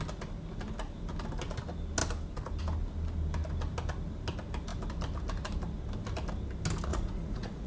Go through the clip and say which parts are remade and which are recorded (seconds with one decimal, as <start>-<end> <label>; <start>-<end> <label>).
0.0-6.9 recorded; 6.9-7.7 remade

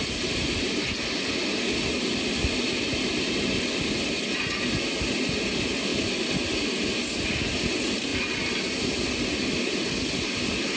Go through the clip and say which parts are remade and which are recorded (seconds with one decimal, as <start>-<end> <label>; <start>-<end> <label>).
0.0-10.8 recorded